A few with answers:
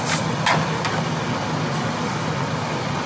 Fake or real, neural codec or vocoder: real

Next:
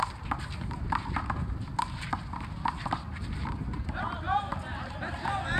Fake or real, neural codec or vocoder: fake, vocoder, BigVGAN v2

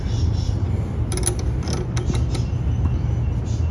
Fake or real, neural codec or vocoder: real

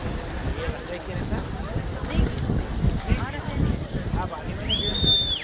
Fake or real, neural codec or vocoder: real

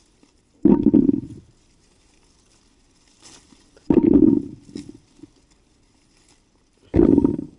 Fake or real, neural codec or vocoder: real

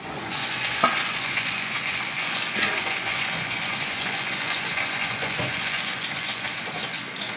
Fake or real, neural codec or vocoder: fake, vocoder, Vocos